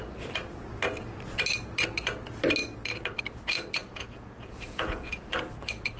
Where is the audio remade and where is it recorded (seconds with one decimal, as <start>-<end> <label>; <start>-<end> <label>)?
0.0-3.8 recorded; 3.8-5.3 remade; 5.3-6.0 recorded